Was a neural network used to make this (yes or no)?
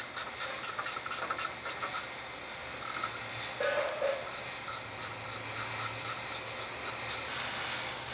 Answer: no